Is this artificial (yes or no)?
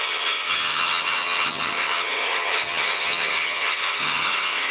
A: yes